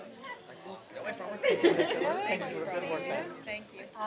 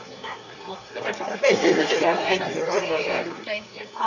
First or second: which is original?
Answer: first